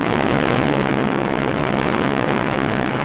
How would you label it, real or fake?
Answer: fake